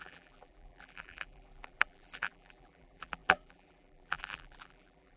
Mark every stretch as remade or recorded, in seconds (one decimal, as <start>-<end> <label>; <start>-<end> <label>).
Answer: 0.0-5.2 remade